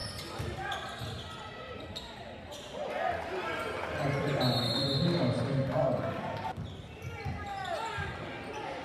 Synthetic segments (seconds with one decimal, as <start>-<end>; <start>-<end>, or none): none